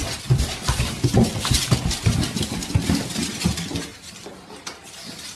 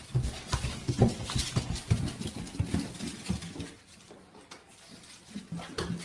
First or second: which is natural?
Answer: second